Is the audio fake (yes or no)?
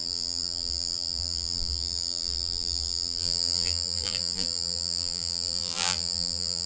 yes